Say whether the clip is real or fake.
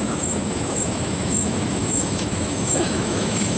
fake